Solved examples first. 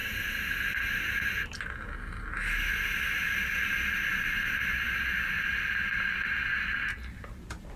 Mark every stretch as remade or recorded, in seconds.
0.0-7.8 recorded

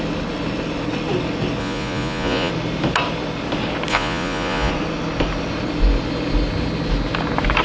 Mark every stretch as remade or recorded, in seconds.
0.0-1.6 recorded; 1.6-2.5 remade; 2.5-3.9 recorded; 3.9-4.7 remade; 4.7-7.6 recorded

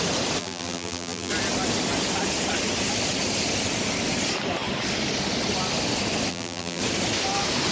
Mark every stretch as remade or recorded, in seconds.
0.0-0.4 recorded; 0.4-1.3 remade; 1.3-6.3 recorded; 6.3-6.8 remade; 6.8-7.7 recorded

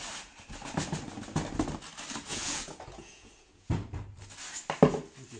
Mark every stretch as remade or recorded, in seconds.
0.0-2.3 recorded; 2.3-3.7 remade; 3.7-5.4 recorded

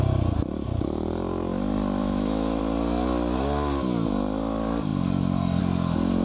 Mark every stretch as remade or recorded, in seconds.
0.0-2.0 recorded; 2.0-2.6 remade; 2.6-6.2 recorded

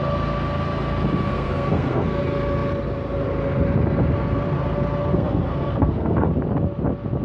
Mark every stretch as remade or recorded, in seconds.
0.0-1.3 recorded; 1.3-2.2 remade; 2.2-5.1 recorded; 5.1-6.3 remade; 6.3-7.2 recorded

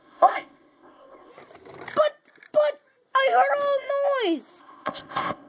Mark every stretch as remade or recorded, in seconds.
0.0-1.3 remade; 1.3-4.6 recorded; 4.6-5.5 remade

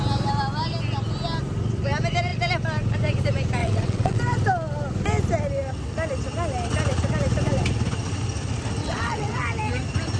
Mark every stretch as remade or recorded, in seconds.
0.0-3.6 recorded; 3.6-4.2 remade; 4.2-8.8 recorded; 8.8-9.4 remade; 9.4-10.2 recorded